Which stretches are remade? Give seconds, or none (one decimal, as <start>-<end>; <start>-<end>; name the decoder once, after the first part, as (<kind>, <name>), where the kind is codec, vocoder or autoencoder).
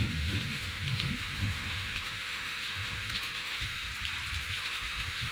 0.0-3.9 (autoencoder, DAC-VAE); 4.4-5.3